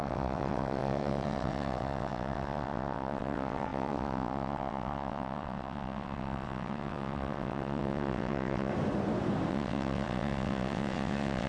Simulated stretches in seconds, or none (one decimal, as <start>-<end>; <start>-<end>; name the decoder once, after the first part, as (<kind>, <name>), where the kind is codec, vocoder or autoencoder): 0.0-8.7 (vocoder, WaveNeXt); 9.5-11.5